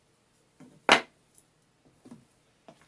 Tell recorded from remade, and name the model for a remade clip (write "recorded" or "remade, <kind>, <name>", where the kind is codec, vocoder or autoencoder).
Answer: recorded